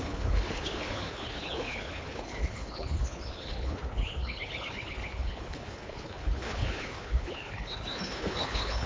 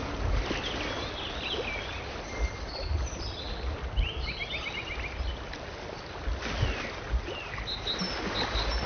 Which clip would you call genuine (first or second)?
second